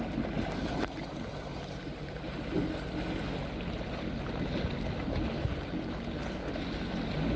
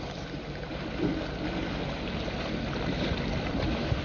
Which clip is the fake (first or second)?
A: second